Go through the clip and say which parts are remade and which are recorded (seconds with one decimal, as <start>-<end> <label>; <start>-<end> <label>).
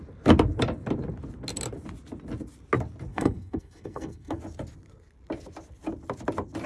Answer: 0.0-3.1 recorded; 3.1-4.4 remade; 4.4-6.7 recorded